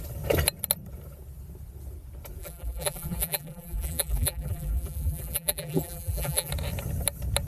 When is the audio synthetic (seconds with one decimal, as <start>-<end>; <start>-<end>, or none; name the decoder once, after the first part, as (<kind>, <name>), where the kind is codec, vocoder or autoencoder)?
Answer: 2.4-6.5 (vocoder, BigVGAN v2)